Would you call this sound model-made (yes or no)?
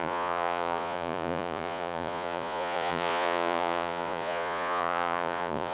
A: yes